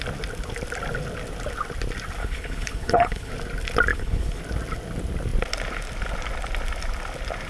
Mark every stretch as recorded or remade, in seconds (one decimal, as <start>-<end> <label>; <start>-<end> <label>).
0.0-2.2 recorded; 2.2-3.3 remade; 3.3-3.9 recorded; 3.9-4.4 remade; 4.4-7.5 recorded